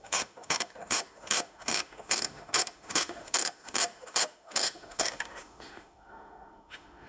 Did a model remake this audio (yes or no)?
yes